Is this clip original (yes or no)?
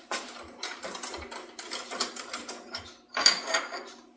yes